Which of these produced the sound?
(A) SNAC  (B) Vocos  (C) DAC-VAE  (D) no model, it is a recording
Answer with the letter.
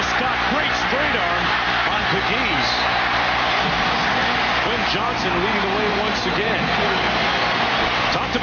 D